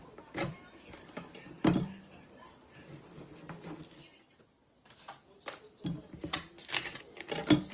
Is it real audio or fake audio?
real